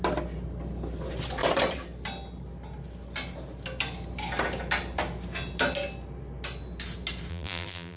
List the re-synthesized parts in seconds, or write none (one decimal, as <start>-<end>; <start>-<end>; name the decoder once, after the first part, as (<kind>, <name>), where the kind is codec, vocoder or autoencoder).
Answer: 7.3-8.0 (vocoder, BigVGAN v2)